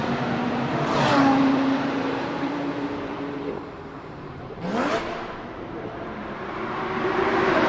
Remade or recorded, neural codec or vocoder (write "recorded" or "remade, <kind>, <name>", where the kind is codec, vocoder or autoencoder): remade, vocoder, BigVGAN v2